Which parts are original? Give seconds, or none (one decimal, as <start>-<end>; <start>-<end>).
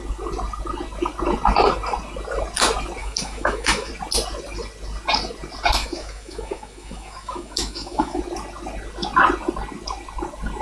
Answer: 0.0-3.0; 3.9-5.8; 8.2-10.6